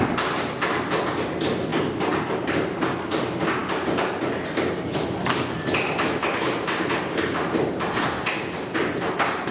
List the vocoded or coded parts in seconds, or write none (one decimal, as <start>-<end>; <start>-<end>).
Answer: 1.7-2.2; 6.2-7.0